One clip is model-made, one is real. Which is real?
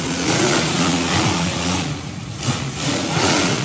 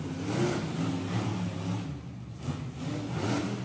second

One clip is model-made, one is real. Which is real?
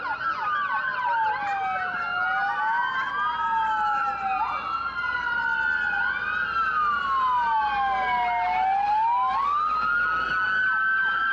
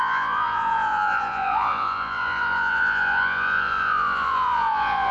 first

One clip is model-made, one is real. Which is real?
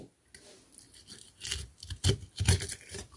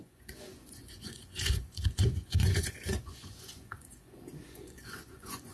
first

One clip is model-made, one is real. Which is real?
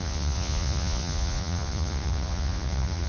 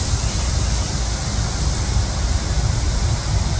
second